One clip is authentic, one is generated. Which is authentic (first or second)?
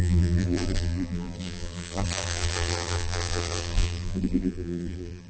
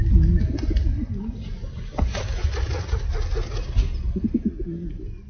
second